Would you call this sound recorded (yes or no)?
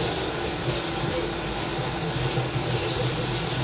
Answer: yes